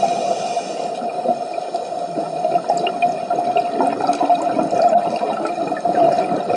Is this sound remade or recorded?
recorded